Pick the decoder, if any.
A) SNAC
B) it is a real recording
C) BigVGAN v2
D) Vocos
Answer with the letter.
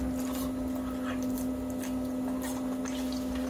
B